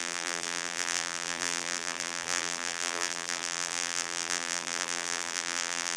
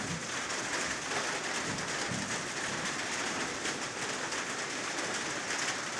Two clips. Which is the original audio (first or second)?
second